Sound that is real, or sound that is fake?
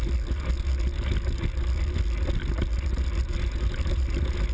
real